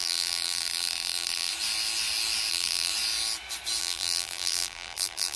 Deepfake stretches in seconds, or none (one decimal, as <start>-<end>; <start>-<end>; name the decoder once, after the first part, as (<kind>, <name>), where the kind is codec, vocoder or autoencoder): 0.0-1.5 (vocoder, BigVGAN v2); 2.5-2.9; 3.8-5.4